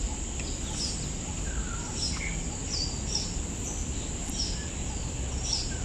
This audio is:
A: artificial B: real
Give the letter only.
B